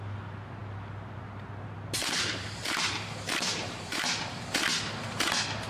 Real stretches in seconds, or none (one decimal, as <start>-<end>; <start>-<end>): 0.0-2.0; 4.1-5.7